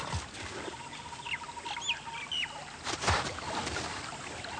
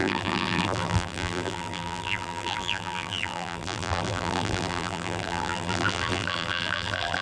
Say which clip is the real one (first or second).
first